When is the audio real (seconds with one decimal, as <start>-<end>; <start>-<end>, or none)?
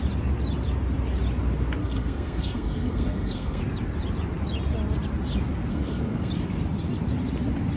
0.0-1.8; 3.6-5.7; 6.3-7.8